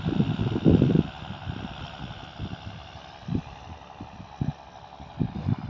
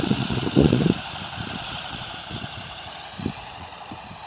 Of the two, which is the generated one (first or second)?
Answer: second